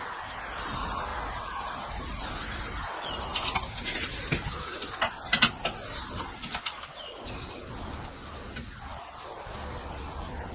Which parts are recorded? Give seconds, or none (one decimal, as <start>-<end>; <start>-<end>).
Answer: 0.0-10.5